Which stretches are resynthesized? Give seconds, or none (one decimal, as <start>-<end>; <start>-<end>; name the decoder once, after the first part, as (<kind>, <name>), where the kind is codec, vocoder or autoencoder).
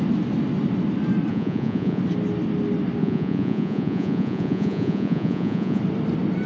1.3-2.0 (vocoder, Vocos); 3.0-5.8